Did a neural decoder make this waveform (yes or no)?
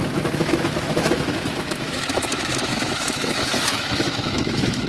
yes